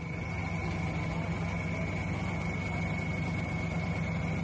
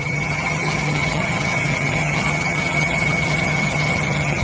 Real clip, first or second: first